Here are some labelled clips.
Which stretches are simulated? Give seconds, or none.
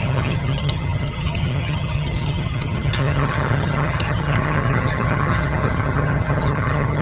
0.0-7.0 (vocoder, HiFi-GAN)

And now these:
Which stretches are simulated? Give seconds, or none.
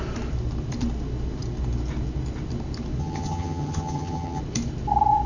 3.0-4.4 (vocoder, HiFi-GAN)